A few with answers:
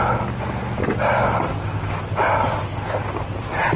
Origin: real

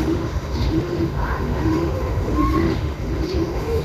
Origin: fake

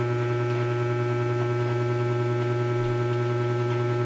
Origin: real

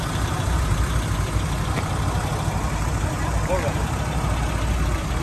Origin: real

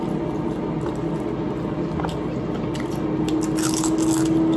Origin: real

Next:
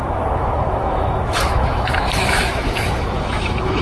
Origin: fake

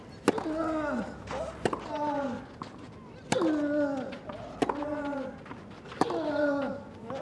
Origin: real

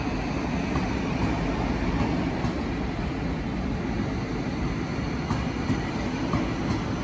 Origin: real